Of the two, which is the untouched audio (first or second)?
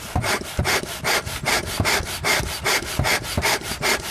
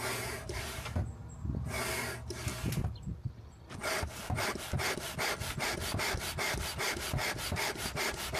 second